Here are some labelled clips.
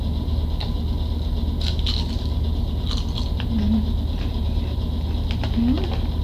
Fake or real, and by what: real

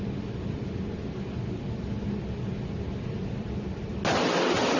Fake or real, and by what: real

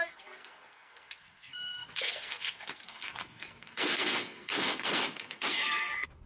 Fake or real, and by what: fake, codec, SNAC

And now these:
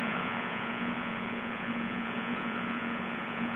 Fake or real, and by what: fake, vocoder, Vocos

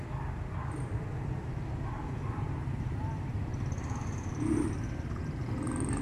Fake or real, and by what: fake, vocoder, BigVGAN v2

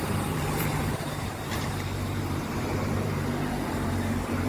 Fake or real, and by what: fake, vocoder, BigVGAN v2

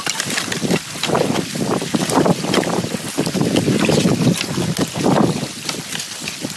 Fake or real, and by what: real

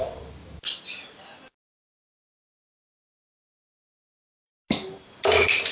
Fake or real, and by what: real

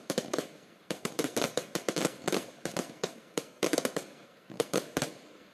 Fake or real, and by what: fake, codec, SNAC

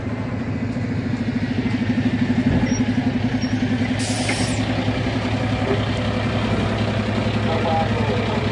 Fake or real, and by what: real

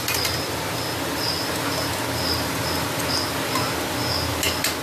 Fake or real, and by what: real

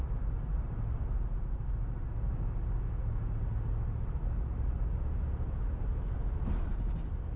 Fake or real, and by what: real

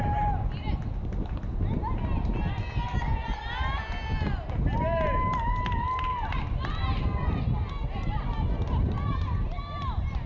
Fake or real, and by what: real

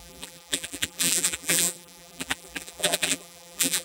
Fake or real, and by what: fake, vocoder, BigVGAN v2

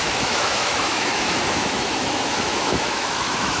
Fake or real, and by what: fake, autoencoder, DAC-VAE